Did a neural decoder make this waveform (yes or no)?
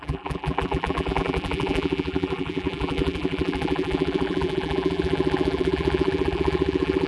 yes